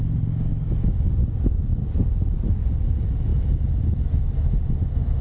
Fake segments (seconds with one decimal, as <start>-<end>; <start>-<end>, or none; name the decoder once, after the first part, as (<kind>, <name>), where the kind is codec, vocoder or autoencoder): none